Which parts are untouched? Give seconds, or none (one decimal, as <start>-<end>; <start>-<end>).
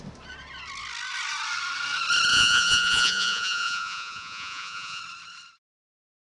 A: 0.0-2.3; 5.0-6.3